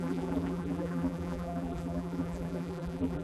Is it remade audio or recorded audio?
remade